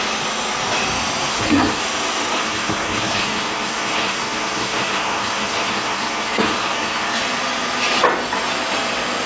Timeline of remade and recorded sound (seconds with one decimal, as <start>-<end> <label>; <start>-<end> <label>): 0.0-1.3 recorded; 1.3-1.8 remade; 1.8-2.4 recorded; 2.4-7.2 remade; 7.2-9.3 recorded